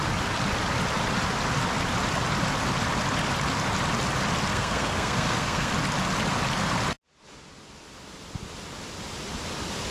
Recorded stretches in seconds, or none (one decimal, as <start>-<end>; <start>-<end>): 0.0-4.5; 5.7-9.9